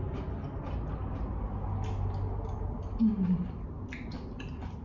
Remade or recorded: recorded